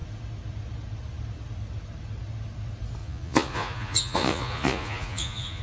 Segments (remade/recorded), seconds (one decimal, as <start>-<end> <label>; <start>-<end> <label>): 0.0-3.0 recorded; 3.0-5.6 remade

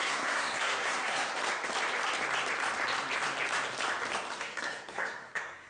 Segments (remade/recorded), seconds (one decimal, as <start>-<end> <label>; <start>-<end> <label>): 0.0-1.3 remade; 1.3-4.4 recorded; 4.4-5.7 remade